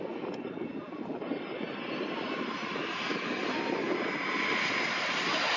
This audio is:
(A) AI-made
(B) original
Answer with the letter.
B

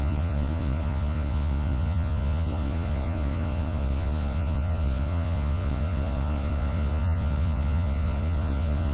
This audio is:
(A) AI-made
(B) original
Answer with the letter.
A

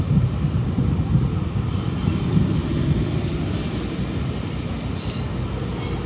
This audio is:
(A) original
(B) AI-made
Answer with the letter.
A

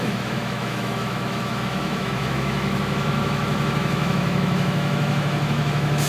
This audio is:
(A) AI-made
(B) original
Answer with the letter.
A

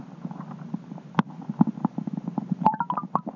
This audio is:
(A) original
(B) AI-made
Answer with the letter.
A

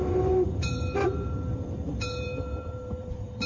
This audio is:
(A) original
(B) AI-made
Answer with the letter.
B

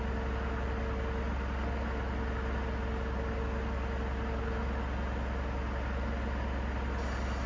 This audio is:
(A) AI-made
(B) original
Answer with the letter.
B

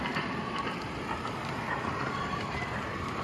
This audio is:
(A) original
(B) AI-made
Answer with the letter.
B